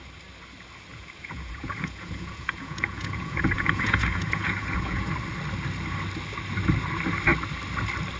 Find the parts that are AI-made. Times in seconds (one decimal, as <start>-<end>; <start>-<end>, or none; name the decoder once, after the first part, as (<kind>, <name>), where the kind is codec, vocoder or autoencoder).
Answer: 0.9-5.1 (vocoder, Vocos)